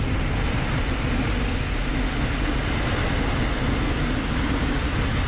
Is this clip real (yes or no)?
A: yes